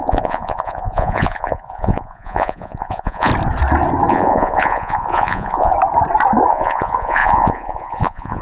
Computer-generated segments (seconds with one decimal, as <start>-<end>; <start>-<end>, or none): 0.0-3.3; 4.1-5.7; 6.5-8.4